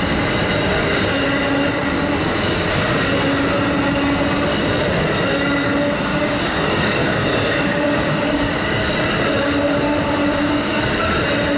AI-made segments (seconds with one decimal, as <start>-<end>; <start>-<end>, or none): 6.1-8.8; 10.2-10.8